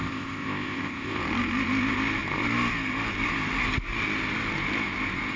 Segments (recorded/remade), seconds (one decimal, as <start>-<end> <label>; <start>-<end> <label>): 0.0-1.2 remade; 1.2-5.4 recorded

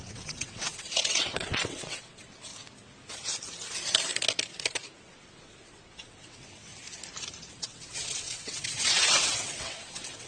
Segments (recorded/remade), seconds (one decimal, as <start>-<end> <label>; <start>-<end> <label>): 0.0-2.5 remade; 2.5-5.0 recorded; 5.0-6.7 remade; 6.7-7.5 recorded; 7.5-10.3 remade

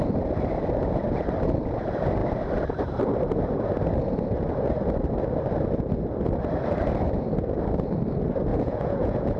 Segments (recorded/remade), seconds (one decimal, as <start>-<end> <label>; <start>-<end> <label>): 0.0-8.5 recorded; 8.5-9.4 remade